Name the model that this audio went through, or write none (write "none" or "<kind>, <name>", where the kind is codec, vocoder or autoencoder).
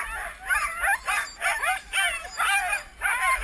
none